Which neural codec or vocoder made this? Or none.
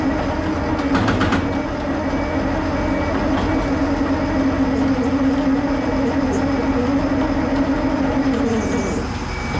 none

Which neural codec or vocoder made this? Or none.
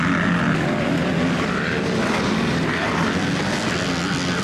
none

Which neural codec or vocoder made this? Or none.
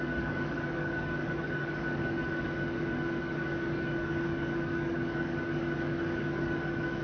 codec, DAC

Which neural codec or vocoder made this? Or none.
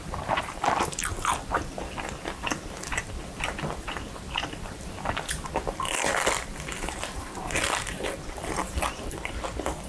vocoder, BigVGAN v2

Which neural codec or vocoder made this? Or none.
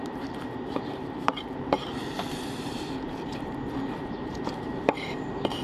vocoder, BigVGAN v2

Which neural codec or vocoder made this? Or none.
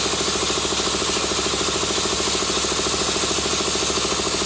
none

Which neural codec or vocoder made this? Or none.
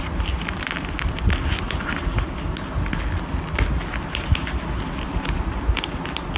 none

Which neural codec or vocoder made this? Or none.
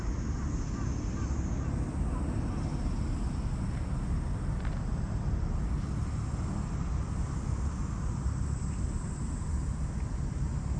none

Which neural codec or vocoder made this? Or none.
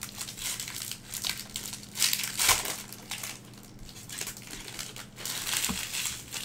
none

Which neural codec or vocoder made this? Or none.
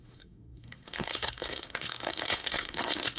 codec, SNAC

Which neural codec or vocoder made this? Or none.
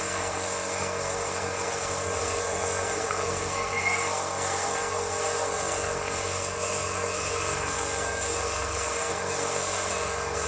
codec, SNAC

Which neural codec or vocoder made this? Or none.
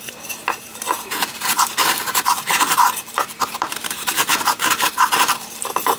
vocoder, BigVGAN v2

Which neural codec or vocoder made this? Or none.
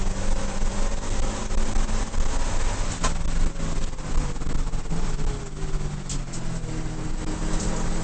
none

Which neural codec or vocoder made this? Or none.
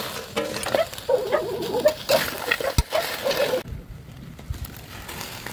none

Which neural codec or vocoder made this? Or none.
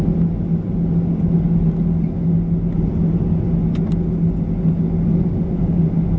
none